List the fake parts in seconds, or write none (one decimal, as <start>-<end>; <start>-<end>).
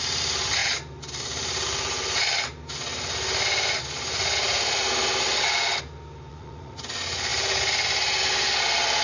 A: 6.3-6.8